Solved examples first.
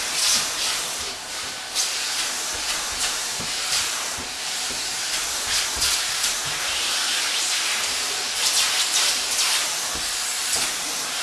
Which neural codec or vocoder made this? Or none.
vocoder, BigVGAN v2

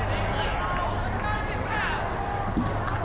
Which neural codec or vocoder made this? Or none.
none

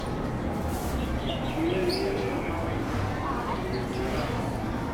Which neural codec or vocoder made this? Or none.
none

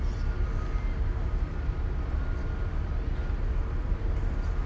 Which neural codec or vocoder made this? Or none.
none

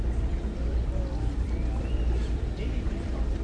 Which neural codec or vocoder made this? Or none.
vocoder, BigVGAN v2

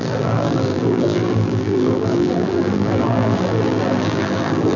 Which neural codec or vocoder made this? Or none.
vocoder, BigVGAN v2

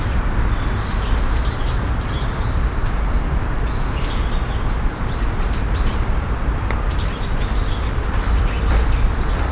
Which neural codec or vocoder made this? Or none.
vocoder, BigVGAN v2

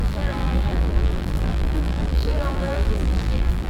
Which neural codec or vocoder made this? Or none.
vocoder, BigVGAN v2